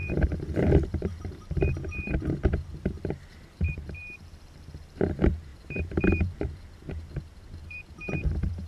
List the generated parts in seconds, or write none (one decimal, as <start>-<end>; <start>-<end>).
0.0-4.0; 4.8-8.7